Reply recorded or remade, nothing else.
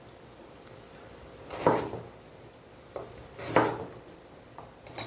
recorded